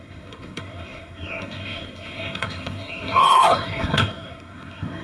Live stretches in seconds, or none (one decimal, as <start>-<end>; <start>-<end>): none